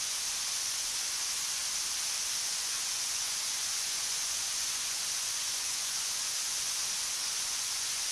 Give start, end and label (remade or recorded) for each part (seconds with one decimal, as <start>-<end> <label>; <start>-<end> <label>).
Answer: 0.0-1.6 remade; 1.6-2.4 recorded; 2.4-8.1 remade